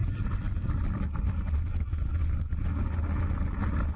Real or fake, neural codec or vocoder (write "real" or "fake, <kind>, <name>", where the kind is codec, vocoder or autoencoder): real